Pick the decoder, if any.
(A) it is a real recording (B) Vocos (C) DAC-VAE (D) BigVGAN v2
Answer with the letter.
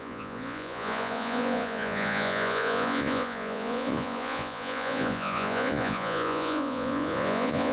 B